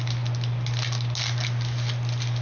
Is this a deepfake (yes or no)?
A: no